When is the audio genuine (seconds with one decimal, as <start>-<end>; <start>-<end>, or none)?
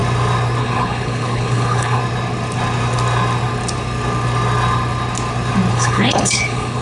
0.0-0.6; 2.0-5.7